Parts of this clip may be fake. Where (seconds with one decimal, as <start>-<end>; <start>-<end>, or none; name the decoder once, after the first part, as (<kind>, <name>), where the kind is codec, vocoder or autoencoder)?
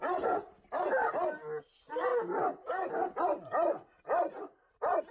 2.1-5.1 (vocoder, BigVGAN v2)